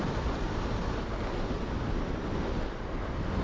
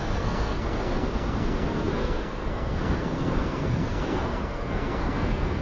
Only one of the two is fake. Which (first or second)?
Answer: second